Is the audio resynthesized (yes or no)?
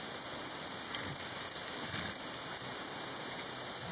no